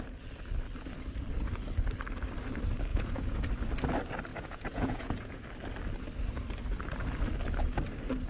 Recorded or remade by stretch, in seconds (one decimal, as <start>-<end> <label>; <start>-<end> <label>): 0.0-2.9 recorded; 2.9-3.5 remade; 3.5-4.3 recorded; 4.3-5.4 remade; 5.4-8.3 recorded